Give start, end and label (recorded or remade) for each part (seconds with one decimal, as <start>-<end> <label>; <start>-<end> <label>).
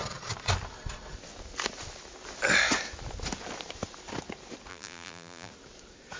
0.0-4.7 recorded; 4.7-5.5 remade; 5.5-6.2 recorded